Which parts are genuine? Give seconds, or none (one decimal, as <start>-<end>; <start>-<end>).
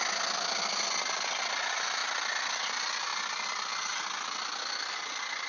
0.0-5.5